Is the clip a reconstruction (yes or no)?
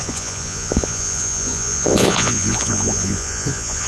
yes